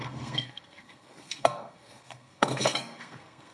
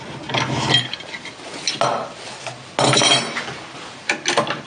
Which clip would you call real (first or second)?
second